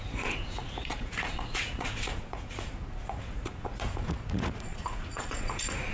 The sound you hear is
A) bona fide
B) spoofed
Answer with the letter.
B